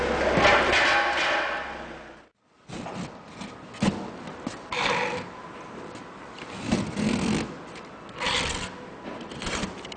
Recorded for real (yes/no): yes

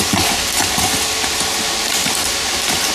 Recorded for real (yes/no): yes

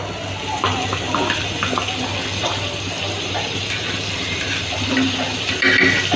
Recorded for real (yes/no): yes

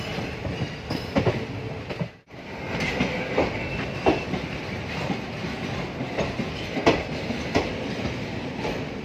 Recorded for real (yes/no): yes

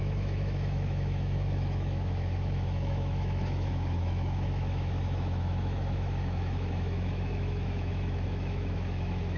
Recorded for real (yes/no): no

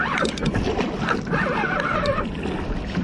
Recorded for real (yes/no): yes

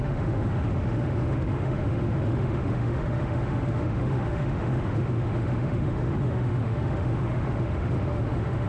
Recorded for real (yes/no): no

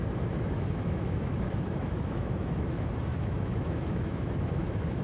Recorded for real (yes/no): no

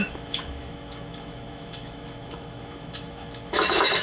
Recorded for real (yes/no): no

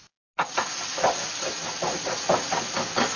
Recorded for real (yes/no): yes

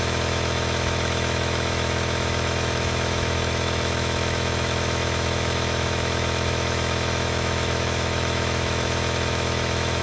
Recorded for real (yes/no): no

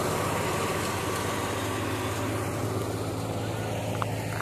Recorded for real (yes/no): yes